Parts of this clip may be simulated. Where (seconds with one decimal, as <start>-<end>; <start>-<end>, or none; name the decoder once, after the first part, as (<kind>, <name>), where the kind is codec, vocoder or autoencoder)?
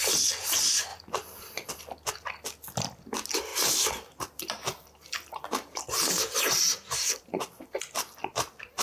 3.5-7.8 (vocoder, BigVGAN v2)